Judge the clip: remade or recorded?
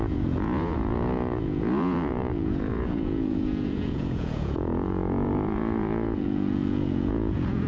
remade